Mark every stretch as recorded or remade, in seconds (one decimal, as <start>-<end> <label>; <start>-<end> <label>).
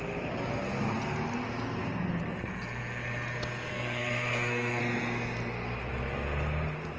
0.0-3.7 recorded; 3.7-4.8 remade; 4.8-7.0 recorded